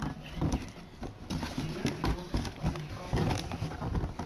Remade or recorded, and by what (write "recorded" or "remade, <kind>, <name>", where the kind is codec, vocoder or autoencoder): recorded